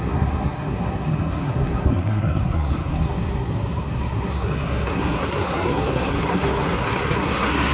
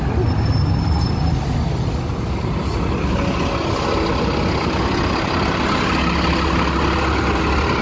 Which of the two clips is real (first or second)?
second